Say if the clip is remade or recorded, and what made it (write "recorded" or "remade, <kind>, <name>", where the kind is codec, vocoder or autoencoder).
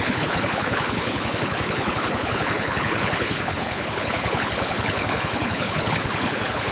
remade, codec, HILCodec